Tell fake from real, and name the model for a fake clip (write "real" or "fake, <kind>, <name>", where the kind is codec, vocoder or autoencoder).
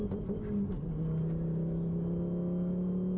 real